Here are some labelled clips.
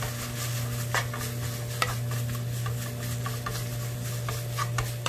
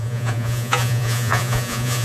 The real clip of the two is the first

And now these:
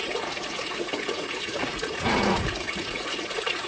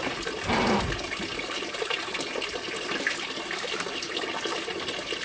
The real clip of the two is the second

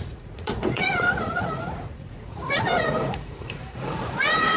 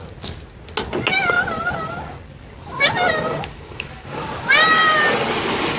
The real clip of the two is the second